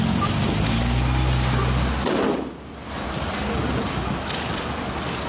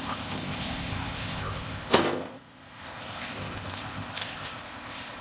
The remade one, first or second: second